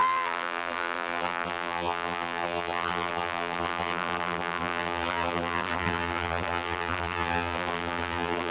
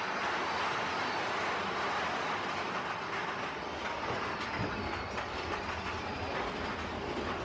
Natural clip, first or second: second